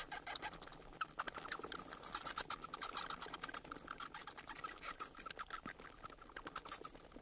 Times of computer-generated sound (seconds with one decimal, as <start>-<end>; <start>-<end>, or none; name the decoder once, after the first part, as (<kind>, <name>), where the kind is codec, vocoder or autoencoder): none